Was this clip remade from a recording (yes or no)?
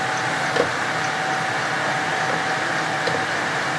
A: no